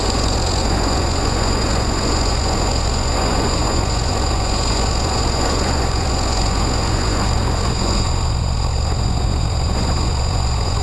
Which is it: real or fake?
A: fake